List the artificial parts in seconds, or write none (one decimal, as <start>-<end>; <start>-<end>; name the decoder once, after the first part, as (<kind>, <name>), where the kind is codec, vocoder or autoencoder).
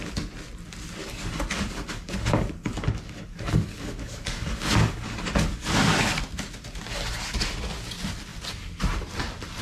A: 1.0-6.2 (codec, DAC)